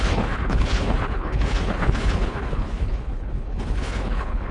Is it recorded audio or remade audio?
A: remade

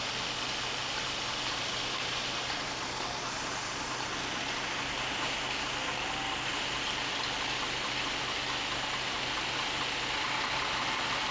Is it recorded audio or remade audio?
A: recorded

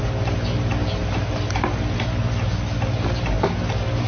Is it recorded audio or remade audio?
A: recorded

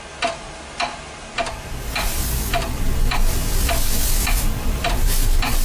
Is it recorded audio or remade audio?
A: recorded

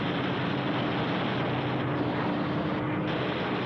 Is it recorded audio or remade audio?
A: recorded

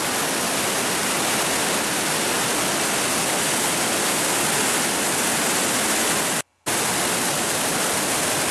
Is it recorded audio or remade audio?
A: recorded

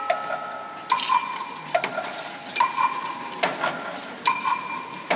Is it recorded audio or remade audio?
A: recorded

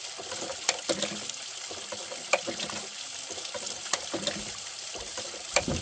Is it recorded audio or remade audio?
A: recorded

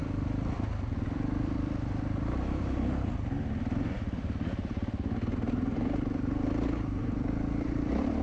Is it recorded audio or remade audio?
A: remade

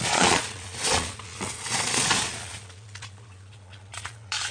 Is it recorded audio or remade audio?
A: remade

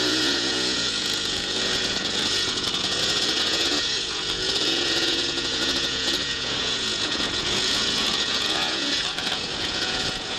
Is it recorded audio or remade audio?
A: remade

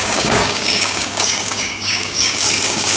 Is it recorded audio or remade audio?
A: remade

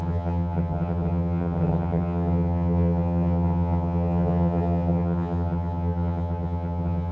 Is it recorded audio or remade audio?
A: remade